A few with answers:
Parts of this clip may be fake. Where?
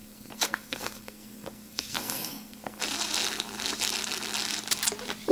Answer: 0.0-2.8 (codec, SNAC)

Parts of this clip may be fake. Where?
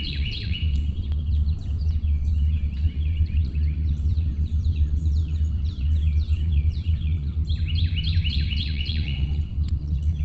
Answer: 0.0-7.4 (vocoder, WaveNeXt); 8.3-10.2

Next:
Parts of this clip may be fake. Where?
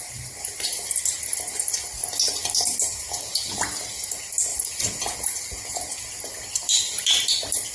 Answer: 4.5-6.4 (vocoder, Vocos)